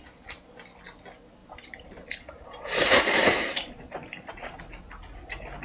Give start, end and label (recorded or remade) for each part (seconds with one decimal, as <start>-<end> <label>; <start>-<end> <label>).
0.0-1.4 recorded; 1.4-4.3 remade; 4.3-5.6 recorded